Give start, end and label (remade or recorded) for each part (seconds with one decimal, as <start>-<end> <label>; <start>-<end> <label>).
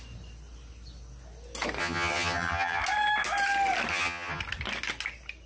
0.0-1.8 recorded; 1.8-2.8 remade; 2.8-3.9 recorded; 3.9-4.4 remade; 4.4-5.5 recorded